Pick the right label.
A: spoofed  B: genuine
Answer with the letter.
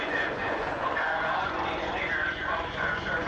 A